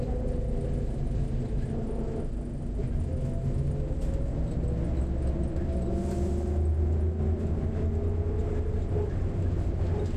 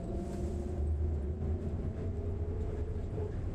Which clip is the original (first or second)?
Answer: first